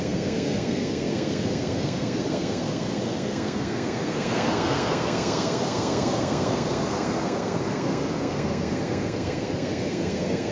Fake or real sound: fake